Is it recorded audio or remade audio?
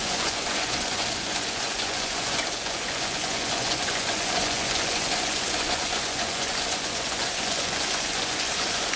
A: remade